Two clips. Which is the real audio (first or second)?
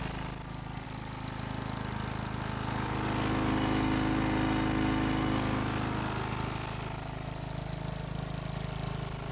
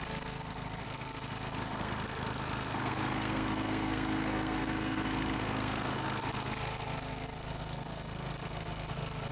first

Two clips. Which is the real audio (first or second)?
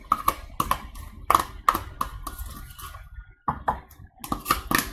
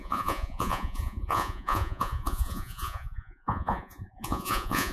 first